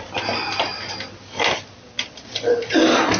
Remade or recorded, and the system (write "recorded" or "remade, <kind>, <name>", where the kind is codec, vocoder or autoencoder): recorded